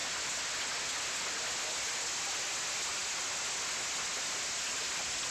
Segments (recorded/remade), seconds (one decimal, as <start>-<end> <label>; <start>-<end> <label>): 0.0-5.3 recorded

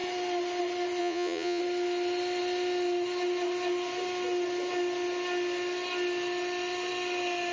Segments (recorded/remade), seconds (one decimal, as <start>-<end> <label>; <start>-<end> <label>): 0.0-1.0 recorded; 1.0-1.6 remade; 1.6-7.5 recorded

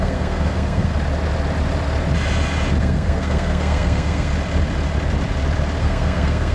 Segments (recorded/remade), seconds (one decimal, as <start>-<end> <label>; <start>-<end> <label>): 0.0-0.9 remade; 0.9-2.8 recorded; 2.8-4.3 remade; 4.3-5.8 recorded; 5.8-6.5 remade

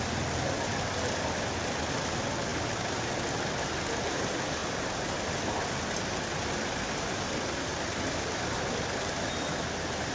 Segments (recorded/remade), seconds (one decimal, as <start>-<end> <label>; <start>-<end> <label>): 0.0-10.1 recorded